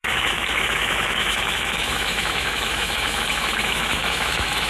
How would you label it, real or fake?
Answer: fake